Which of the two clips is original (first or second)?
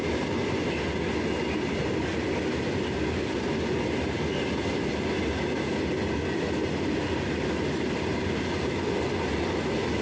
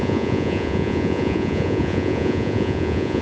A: first